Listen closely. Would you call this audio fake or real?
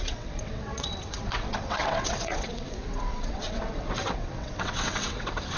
fake